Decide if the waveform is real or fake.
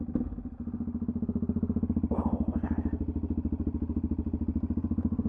real